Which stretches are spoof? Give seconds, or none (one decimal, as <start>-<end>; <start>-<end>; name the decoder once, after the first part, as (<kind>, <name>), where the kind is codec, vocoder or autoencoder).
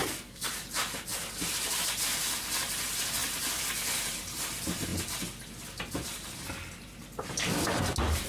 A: 0.0-0.5 (codec, SNAC)